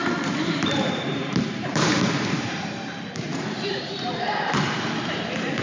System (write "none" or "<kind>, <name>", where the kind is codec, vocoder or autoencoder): vocoder, BigVGAN v2